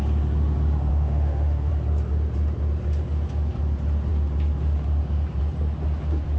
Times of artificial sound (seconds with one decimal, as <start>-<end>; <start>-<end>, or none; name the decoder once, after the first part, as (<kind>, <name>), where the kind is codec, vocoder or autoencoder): 0.9-1.7 (autoencoder, DAC-VAE)